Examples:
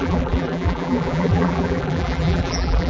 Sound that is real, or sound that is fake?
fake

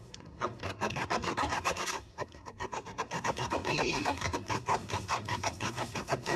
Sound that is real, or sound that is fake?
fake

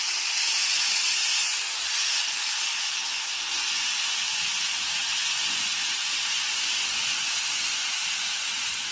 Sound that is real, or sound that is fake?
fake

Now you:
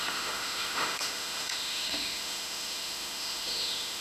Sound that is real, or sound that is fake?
fake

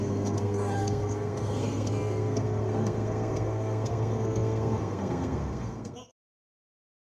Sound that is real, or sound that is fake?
fake